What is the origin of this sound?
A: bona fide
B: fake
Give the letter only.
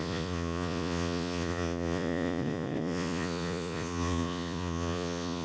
B